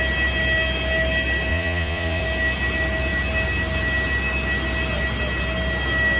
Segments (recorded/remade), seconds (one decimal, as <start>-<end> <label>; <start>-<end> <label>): 0.0-1.5 recorded; 1.5-2.2 remade; 2.2-6.2 recorded

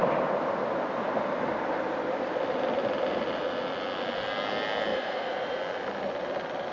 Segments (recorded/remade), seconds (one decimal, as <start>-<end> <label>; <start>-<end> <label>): 0.0-4.9 recorded; 4.9-5.6 remade; 5.6-6.7 recorded

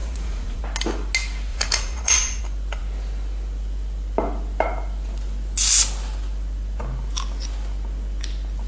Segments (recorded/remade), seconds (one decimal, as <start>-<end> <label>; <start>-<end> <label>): 0.0-0.6 remade; 0.6-1.5 recorded; 1.5-2.4 remade; 2.4-8.7 recorded

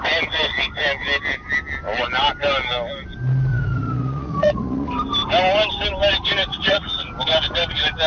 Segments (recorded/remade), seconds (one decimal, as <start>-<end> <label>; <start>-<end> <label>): 0.0-3.5 recorded; 3.5-4.9 remade; 4.9-6.5 recorded; 6.5-7.1 remade; 7.1-8.1 recorded